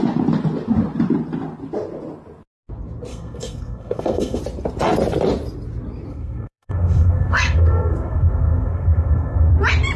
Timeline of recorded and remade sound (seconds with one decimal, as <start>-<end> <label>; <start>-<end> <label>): 0.0-3.1 recorded; 3.1-4.4 remade; 4.4-6.1 recorded; 6.1-9.5 remade; 9.5-10.0 recorded